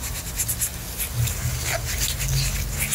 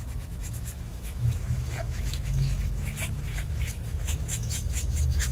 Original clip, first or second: first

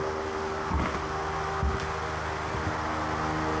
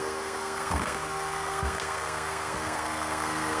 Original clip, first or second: first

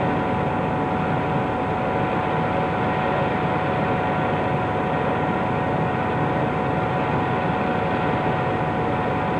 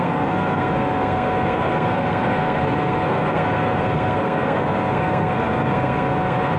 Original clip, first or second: first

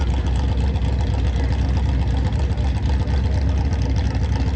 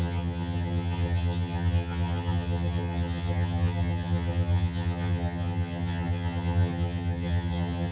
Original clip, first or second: first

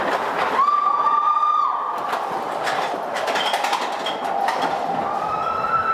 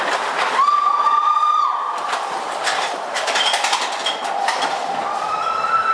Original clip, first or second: first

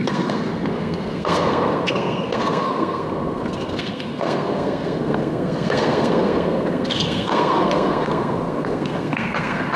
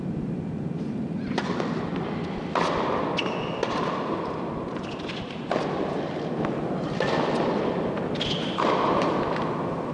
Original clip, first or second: second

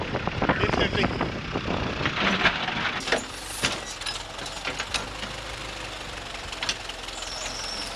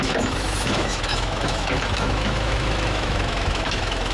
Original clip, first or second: first